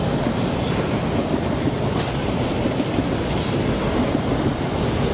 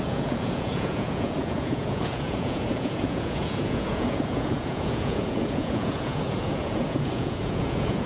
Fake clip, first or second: second